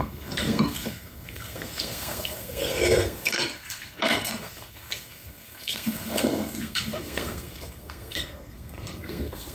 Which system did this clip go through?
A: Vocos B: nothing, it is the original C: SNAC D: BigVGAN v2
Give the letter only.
C